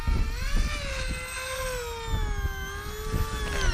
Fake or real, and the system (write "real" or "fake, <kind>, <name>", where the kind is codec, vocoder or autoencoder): real